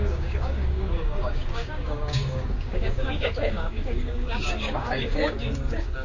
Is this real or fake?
fake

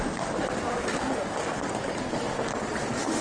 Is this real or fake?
real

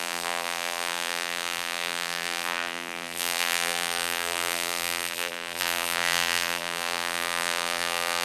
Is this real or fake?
fake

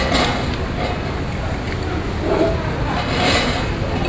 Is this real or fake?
real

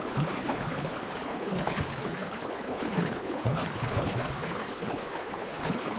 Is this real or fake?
fake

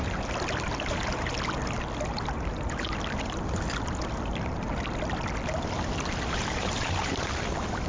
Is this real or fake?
real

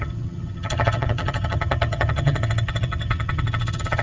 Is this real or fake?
fake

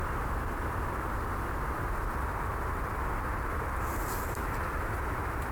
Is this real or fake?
real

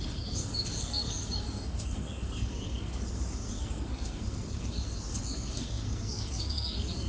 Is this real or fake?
fake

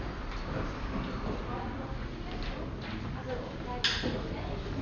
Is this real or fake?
real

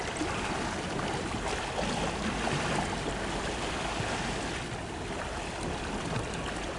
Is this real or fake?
real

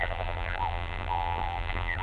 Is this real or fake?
fake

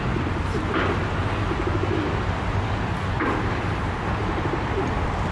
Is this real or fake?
real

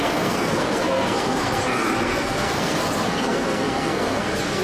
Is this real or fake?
fake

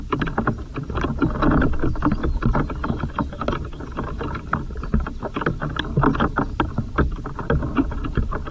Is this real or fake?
real